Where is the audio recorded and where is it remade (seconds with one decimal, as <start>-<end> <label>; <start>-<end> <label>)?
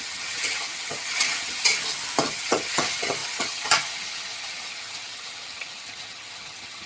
0.0-1.7 remade; 1.7-2.3 recorded; 2.3-6.9 remade